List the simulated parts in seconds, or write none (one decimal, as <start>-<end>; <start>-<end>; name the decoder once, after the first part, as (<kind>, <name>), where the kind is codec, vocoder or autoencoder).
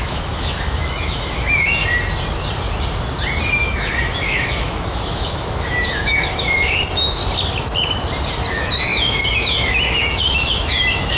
0.0-1.8 (autoencoder, DAC-VAE); 3.5-7.2; 8.5-11.2